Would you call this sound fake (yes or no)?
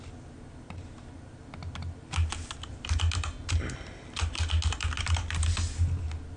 no